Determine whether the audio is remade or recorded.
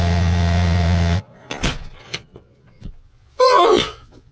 remade